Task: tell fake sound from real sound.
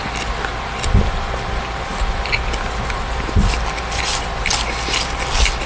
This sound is real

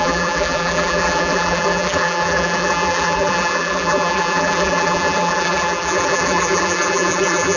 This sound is fake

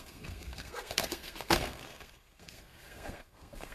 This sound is fake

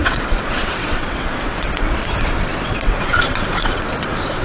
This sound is fake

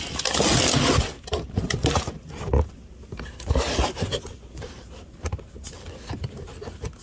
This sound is real